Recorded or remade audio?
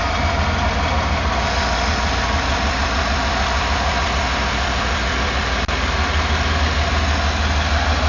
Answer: recorded